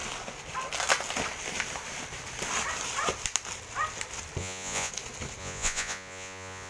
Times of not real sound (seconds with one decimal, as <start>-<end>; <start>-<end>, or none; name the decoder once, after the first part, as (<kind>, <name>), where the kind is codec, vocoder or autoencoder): 4.4-4.9 (vocoder, Vocos); 5.4-6.7